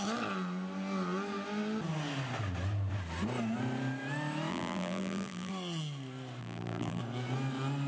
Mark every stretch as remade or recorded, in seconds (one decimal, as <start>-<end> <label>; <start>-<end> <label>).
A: 0.0-4.5 recorded; 4.5-5.5 remade; 5.5-6.4 recorded; 6.4-7.0 remade; 7.0-7.9 recorded